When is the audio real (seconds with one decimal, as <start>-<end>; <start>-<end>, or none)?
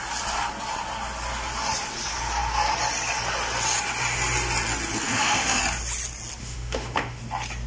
0.0-5.1; 5.6-6.4; 7.2-7.7